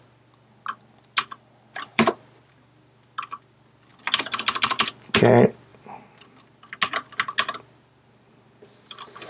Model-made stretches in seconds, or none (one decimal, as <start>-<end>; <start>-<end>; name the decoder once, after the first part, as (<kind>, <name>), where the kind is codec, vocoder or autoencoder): 1.9-2.5 (vocoder, BigVGAN v2); 3.9-4.9